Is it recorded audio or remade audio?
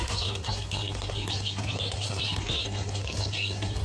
remade